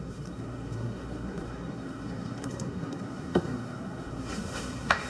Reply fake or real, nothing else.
fake